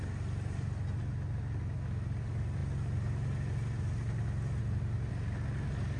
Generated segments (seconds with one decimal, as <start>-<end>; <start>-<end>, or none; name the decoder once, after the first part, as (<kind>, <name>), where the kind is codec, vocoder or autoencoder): none